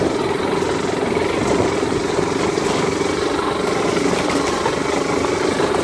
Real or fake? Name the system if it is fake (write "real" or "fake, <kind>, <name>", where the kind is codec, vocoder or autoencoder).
real